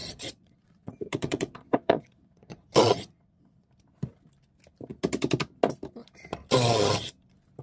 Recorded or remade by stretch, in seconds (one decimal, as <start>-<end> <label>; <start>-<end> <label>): 0.0-3.7 remade; 3.7-7.6 recorded